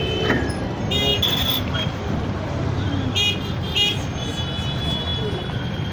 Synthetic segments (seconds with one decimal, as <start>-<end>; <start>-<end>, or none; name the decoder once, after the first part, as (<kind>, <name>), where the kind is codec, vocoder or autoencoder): none